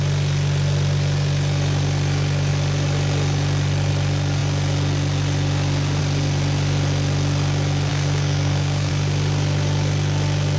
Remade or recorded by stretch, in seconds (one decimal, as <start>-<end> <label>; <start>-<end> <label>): 0.0-7.9 recorded; 7.9-8.9 remade; 8.9-10.6 recorded